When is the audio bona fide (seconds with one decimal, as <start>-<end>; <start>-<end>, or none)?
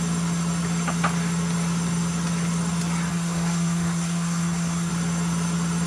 0.0-3.1; 4.9-5.9